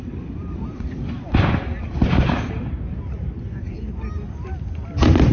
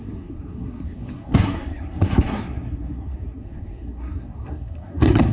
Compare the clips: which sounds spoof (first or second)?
second